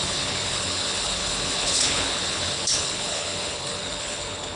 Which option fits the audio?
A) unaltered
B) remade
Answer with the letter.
B